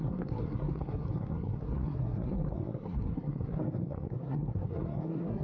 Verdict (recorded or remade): remade